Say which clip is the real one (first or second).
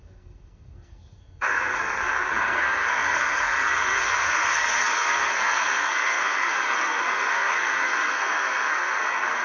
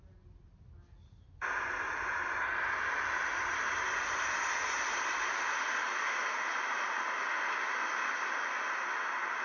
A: second